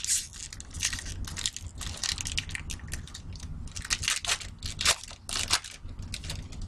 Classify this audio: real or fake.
real